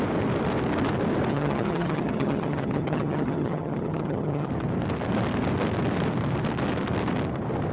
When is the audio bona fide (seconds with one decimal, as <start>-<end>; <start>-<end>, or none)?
0.0-1.3; 4.5-7.7